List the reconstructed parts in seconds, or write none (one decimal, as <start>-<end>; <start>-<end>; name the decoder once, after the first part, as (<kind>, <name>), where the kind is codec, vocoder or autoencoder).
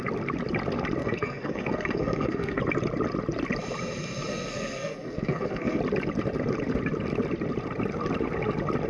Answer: 1.0-2.6 (codec, SNAC); 4.3-5.8